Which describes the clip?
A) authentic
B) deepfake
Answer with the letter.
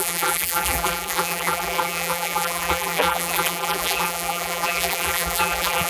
B